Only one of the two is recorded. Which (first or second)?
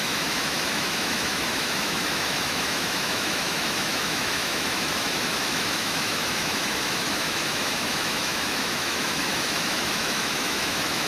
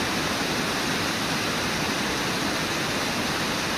second